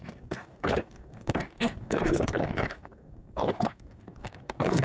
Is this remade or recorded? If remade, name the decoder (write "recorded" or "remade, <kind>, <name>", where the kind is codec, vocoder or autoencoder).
remade, codec, DAC